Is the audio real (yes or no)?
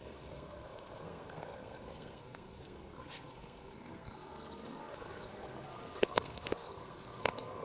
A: no